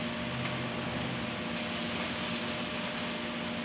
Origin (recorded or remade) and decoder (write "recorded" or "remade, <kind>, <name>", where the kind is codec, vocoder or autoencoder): recorded